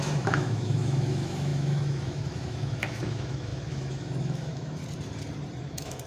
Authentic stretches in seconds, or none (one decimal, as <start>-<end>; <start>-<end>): 4.8-5.6